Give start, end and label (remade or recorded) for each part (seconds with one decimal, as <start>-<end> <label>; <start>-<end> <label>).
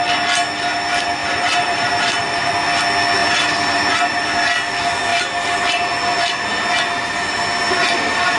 0.0-1.2 recorded; 1.2-2.5 remade; 2.5-3.2 recorded; 3.2-4.3 remade; 4.3-8.4 recorded